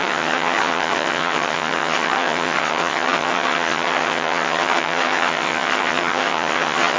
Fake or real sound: fake